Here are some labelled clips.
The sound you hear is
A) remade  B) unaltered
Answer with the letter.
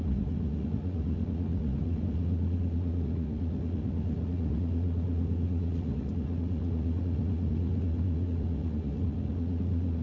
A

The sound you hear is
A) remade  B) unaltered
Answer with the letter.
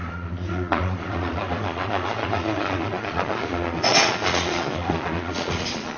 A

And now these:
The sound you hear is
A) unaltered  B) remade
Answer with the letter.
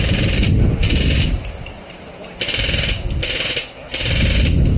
A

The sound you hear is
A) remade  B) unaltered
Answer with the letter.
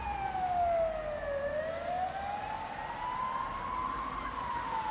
B